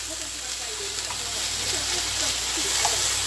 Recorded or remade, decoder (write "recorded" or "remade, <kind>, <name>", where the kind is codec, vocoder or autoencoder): recorded